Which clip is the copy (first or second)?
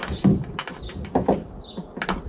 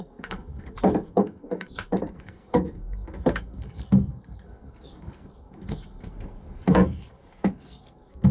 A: second